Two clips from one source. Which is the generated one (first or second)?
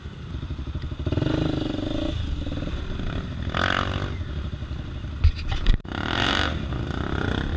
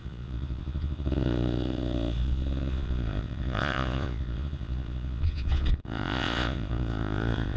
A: second